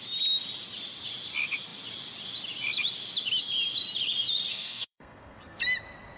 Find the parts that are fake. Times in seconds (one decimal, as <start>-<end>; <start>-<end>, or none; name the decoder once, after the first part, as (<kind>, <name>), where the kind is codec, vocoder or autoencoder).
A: 4.5-5.6 (codec, SNAC)